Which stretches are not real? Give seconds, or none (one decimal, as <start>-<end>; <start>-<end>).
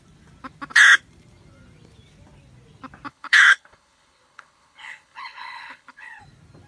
3.1-6.2